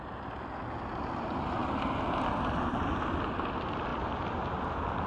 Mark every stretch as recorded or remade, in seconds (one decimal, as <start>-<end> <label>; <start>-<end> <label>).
0.0-5.1 remade